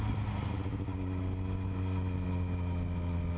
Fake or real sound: real